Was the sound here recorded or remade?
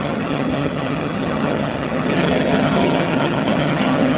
remade